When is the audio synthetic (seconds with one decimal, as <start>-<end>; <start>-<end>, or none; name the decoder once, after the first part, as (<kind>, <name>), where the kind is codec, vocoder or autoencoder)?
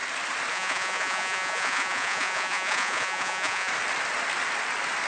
0.5-3.7 (vocoder, Vocos)